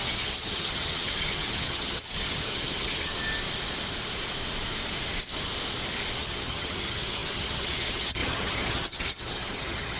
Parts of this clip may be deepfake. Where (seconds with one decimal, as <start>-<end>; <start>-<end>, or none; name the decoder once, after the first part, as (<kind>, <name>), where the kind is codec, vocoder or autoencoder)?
0.0-3.1 (vocoder, HiFi-GAN); 6.2-10.0